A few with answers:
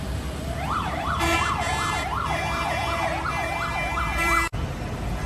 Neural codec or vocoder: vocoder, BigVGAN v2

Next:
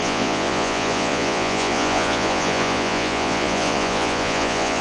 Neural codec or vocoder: vocoder, Vocos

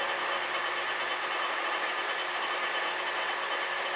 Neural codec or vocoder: none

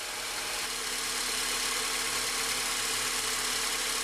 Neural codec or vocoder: none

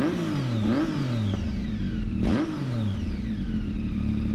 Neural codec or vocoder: none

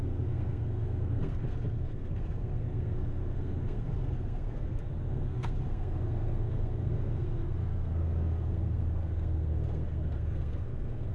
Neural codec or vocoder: codec, SNAC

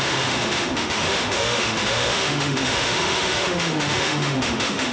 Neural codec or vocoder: autoencoder, DAC-VAE